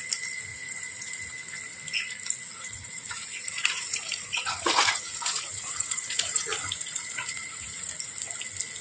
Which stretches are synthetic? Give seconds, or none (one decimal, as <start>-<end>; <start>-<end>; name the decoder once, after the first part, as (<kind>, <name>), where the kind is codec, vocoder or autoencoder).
0.5-1.3 (vocoder, Vocos); 2.6-7.9